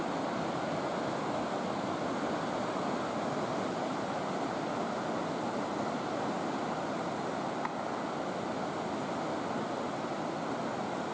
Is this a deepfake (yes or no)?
no